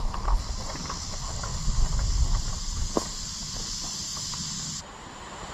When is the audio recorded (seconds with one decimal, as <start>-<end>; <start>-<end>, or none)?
0.0-5.5